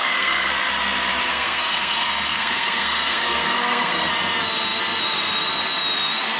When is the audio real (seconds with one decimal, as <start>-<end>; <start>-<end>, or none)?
0.5-1.3; 4.1-6.4